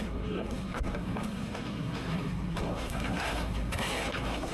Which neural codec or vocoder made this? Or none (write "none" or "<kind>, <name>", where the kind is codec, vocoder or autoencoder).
codec, SNAC